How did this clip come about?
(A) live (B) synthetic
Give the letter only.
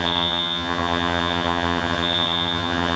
B